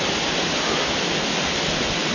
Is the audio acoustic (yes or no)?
yes